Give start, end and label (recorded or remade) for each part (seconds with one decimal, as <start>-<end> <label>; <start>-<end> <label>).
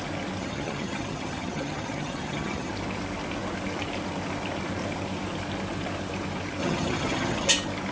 0.0-0.4 recorded; 0.4-2.7 remade; 2.7-6.6 recorded; 6.6-7.5 remade; 7.5-7.9 recorded